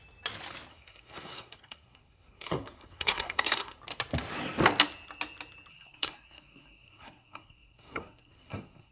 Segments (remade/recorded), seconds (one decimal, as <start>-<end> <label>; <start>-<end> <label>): 0.0-0.7 recorded; 0.7-3.8 remade; 3.8-5.7 recorded; 5.7-8.9 remade